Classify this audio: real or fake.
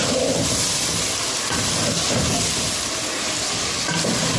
real